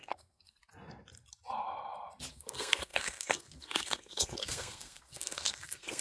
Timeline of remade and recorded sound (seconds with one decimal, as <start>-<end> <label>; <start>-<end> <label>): 0.0-0.6 remade; 0.6-2.3 recorded; 2.3-6.0 remade